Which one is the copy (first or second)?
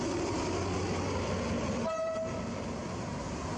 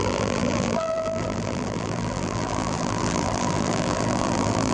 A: second